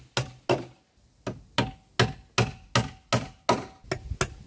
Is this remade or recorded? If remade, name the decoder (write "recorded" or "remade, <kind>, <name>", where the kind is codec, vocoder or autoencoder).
recorded